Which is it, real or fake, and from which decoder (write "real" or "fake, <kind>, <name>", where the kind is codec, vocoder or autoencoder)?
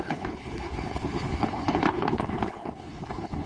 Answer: fake, codec, HILCodec